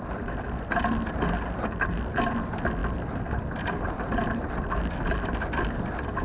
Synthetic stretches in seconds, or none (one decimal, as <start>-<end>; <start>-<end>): none